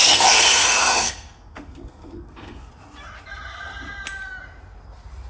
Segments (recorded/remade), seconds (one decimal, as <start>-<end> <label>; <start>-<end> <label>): 0.0-2.7 remade; 2.7-5.3 recorded